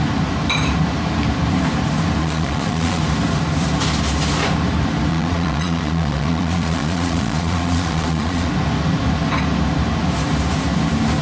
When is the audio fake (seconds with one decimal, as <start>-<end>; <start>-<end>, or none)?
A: 2.2-3.0; 5.1-8.5